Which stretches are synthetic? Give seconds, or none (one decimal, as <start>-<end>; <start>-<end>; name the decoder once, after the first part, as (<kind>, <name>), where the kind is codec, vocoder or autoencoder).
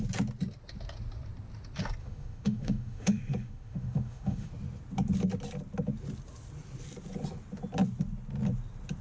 2.0-4.5 (autoencoder, DAC-VAE)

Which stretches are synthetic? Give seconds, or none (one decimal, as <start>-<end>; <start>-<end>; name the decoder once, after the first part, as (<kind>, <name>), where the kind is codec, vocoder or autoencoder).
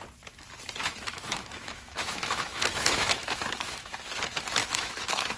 0.8-4.0 (autoencoder, DAC-VAE); 4.6-5.4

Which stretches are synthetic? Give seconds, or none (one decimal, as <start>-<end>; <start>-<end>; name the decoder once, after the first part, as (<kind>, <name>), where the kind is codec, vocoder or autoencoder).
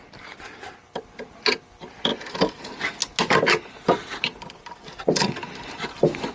none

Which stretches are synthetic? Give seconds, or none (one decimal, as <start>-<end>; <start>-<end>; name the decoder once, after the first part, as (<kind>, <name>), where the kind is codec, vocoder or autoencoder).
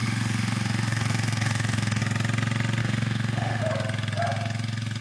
0.0-2.0 (autoencoder, DAC-VAE); 2.8-3.6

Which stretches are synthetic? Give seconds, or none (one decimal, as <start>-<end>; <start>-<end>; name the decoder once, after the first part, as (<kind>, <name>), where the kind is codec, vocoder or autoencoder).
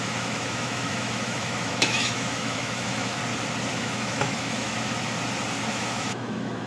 0.0-3.2 (autoencoder, DAC-VAE); 3.7-4.7; 5.6-6.7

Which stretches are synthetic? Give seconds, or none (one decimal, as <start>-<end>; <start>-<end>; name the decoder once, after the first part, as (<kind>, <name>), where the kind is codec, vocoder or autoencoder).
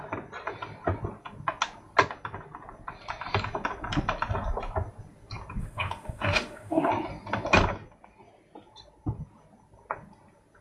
5.6-6.9 (autoencoder, DAC-VAE)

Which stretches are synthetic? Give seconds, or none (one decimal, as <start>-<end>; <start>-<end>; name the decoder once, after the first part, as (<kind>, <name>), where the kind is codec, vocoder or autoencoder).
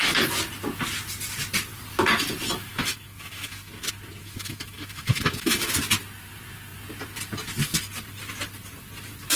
2.6-3.7 (autoencoder, DAC-VAE); 4.2-5.7